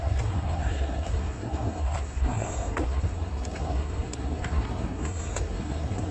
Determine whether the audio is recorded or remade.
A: remade